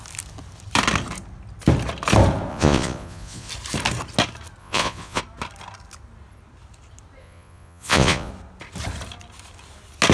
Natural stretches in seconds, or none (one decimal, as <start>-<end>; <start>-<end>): 0.0-2.5; 3.5-4.6; 5.2-7.2; 8.3-10.1